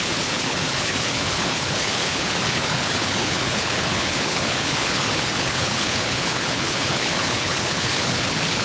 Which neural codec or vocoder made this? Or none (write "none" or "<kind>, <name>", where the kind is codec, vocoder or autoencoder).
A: codec, HILCodec